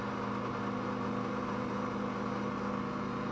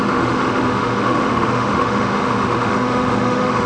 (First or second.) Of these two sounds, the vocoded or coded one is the second